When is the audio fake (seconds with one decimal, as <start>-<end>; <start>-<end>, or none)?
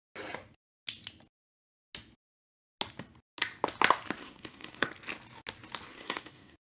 4.2-4.9; 5.9-6.6